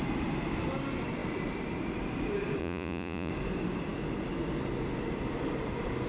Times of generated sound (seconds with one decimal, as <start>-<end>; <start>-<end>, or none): 2.6-3.3